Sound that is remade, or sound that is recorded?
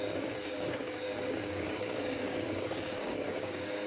remade